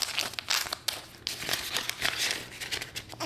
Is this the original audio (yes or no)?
yes